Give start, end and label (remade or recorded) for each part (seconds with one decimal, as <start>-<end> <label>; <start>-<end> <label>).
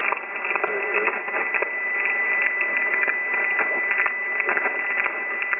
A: 0.0-5.6 recorded